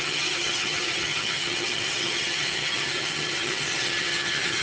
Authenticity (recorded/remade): remade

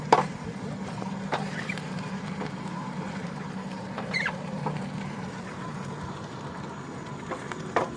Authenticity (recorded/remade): remade